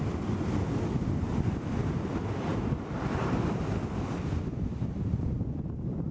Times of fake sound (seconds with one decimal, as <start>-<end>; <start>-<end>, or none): 2.5-3.6